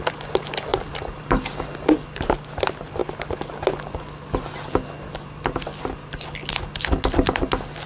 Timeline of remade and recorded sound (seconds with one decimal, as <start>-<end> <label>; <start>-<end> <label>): 0.0-0.7 recorded; 0.7-2.3 remade; 2.3-7.9 recorded